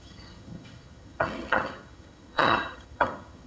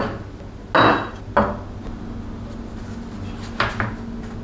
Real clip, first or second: second